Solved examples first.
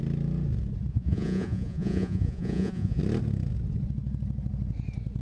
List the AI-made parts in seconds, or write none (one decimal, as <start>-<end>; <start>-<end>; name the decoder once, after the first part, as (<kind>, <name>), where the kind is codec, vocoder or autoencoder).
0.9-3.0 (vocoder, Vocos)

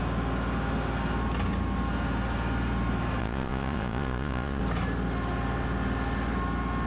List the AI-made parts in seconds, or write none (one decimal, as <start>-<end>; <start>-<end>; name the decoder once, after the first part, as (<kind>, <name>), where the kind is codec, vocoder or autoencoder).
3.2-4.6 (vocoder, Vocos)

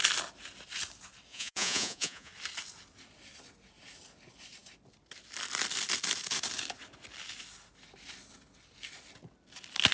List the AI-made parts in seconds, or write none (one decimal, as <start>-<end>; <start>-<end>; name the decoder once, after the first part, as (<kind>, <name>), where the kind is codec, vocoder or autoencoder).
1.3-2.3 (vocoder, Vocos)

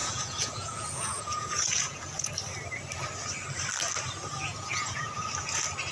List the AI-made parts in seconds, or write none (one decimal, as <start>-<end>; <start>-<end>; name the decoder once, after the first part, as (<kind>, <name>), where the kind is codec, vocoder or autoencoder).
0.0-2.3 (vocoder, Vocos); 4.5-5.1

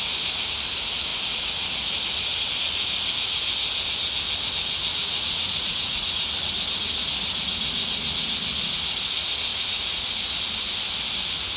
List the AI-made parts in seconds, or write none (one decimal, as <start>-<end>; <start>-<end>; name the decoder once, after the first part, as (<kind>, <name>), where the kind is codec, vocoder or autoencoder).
4.9-6.5 (vocoder, Vocos); 9.5-10.1

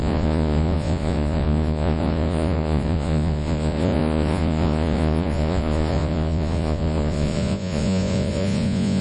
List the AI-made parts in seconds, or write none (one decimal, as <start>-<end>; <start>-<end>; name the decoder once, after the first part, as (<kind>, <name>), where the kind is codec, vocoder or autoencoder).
0.0-9.0 (vocoder, Vocos)

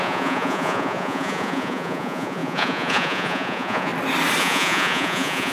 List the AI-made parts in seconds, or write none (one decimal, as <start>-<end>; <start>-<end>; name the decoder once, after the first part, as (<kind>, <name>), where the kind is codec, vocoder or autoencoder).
0.0-3.9 (vocoder, Vocos); 4.4-5.5

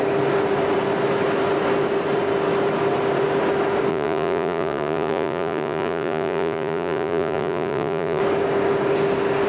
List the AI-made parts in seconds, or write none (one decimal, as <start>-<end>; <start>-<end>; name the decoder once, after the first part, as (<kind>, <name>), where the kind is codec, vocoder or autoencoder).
3.9-8.2 (vocoder, Vocos)